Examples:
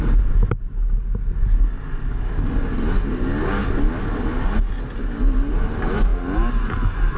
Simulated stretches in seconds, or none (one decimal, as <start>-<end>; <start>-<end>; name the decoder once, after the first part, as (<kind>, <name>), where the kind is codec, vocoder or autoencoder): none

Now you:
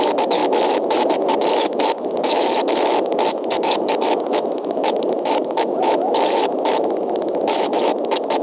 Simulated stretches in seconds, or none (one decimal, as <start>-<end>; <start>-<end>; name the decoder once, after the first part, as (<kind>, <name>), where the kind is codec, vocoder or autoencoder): 0.0-8.4 (autoencoder, DAC-VAE)

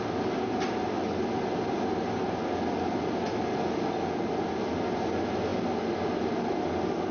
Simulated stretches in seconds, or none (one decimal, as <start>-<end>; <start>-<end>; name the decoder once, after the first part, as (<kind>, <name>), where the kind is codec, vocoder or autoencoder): none